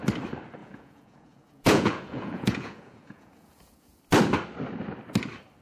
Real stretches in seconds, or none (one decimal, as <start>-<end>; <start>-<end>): 0.0-0.6; 4.0-5.6